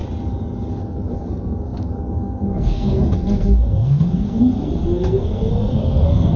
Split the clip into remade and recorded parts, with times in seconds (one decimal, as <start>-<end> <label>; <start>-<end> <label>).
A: 0.0-0.8 recorded; 0.8-6.4 remade